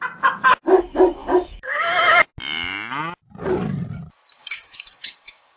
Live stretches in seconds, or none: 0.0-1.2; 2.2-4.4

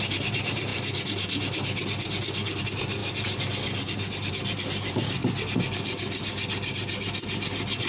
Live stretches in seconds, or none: 0.7-2.6; 3.0-4.3; 5.2-7.9

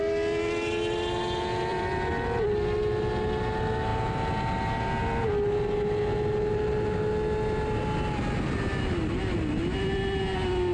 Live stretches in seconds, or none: 0.0-1.7; 2.4-10.7

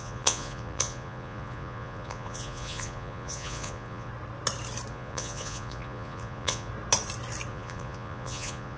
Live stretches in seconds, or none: 4.1-4.9; 6.7-7.5

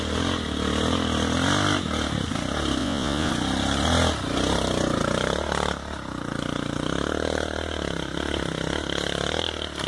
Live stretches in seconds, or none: 0.0-2.8; 3.3-9.9